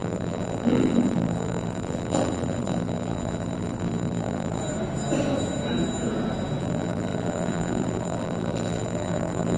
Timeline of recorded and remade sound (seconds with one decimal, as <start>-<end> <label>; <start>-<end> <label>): 0.0-4.6 remade; 4.6-6.6 recorded; 6.6-9.6 remade